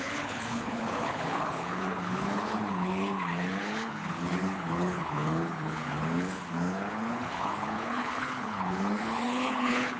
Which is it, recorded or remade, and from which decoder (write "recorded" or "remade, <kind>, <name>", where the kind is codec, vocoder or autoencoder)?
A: remade, codec, HILCodec